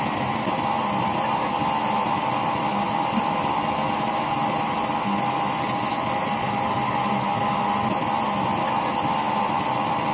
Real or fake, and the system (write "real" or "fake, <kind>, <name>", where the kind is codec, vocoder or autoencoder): real